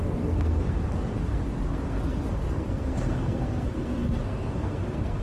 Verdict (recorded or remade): remade